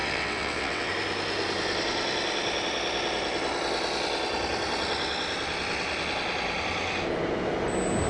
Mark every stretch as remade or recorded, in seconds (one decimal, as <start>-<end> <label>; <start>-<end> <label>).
0.0-0.9 remade; 0.9-8.1 recorded